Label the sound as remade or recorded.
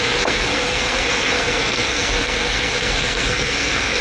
remade